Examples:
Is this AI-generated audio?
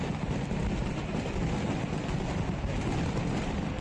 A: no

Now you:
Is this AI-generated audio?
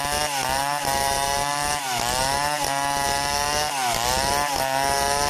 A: no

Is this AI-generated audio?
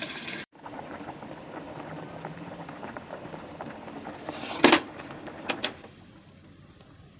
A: yes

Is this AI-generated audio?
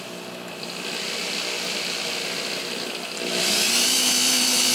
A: no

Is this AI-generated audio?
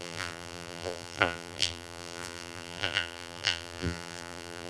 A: yes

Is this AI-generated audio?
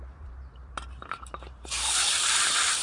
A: yes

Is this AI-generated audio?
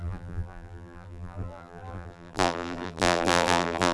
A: yes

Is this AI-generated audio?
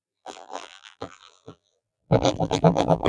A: yes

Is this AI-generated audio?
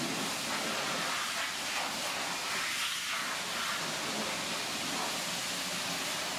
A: no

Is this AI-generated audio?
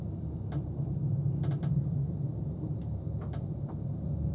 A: no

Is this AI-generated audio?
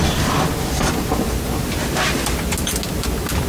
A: no